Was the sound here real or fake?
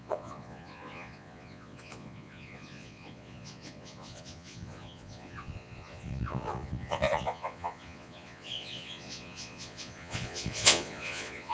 fake